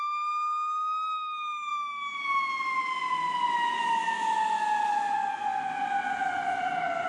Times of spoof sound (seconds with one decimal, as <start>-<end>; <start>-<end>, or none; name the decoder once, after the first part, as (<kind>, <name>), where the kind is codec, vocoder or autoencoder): none